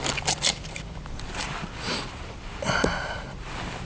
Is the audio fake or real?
fake